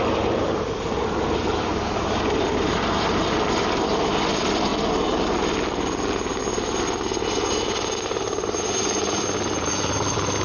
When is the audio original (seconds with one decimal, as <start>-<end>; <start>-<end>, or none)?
4.7-7.5